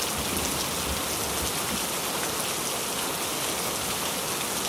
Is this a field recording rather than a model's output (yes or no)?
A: yes